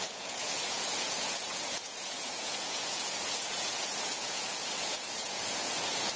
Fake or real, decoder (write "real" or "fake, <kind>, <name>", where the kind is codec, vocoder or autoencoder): fake, vocoder, Vocos